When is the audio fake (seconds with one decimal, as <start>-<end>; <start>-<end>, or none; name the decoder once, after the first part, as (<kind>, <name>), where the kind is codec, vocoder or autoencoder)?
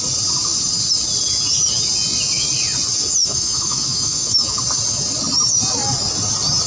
3.2-4.6 (autoencoder, DAC-VAE)